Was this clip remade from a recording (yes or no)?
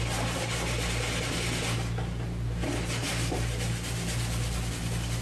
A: no